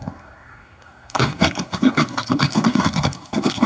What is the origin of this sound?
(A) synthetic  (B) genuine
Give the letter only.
A